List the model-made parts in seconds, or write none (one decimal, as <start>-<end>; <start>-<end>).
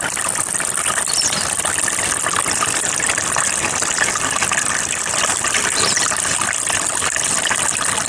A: 5.3-5.9